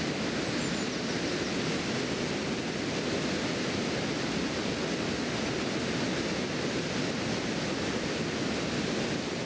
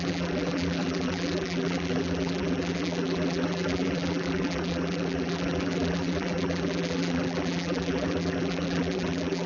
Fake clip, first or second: second